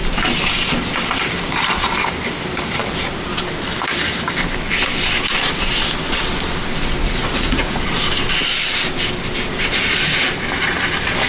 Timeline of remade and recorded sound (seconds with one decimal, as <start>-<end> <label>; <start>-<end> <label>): 0.0-7.0 recorded; 7.0-7.8 remade; 7.8-11.3 recorded